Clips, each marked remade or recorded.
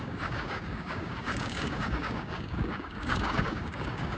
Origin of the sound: remade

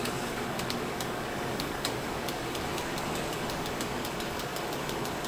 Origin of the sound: remade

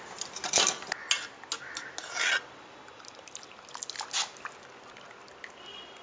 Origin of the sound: recorded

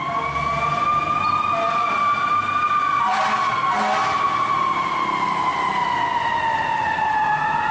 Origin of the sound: recorded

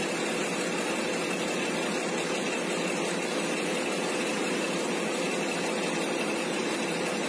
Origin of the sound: recorded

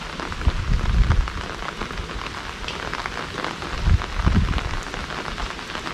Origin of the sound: recorded